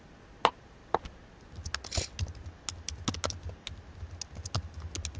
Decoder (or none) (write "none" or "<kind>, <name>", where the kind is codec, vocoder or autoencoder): none